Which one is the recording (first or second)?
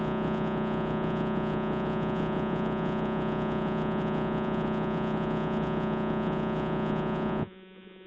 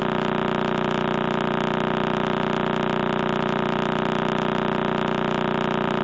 second